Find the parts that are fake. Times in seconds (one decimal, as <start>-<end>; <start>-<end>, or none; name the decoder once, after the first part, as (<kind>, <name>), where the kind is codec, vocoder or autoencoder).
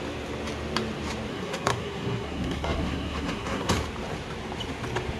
1.3-3.7 (codec, SNAC)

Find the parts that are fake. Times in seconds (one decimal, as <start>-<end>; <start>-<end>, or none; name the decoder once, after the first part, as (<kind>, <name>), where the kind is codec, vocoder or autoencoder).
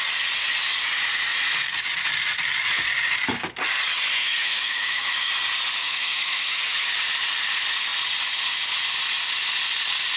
4.2-5.3 (autoencoder, DAC-VAE); 5.8-6.9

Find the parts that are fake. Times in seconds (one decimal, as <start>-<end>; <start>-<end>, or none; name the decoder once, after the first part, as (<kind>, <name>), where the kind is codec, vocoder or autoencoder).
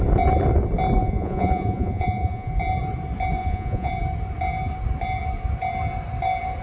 1.0-2.5 (vocoder, Vocos); 3.4-3.9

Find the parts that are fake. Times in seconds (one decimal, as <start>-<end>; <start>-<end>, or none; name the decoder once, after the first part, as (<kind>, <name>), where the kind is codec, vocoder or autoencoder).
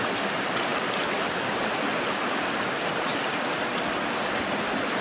none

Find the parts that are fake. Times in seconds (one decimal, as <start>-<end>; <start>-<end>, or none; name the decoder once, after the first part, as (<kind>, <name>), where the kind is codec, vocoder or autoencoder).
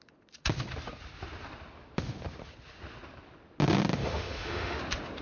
4.0-4.8 (autoencoder, DAC-VAE)